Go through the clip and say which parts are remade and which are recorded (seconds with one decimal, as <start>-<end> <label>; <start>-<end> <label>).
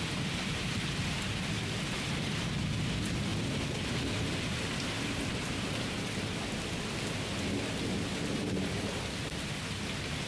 0.0-10.3 recorded